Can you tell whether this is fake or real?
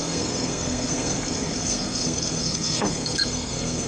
fake